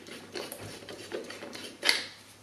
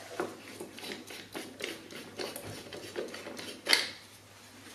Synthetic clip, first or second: first